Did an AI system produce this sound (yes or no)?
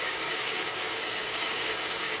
yes